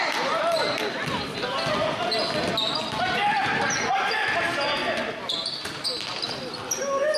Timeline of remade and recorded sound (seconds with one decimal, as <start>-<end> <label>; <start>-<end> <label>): 0.0-7.2 recorded

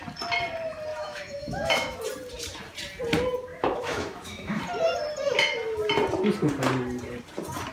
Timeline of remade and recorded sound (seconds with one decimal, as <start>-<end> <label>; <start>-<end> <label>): 0.0-0.9 recorded; 0.9-2.0 remade; 2.0-3.5 recorded; 3.5-4.6 remade; 4.6-7.7 recorded